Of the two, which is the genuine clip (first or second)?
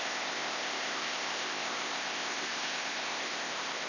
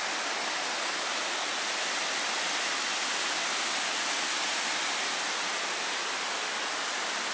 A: second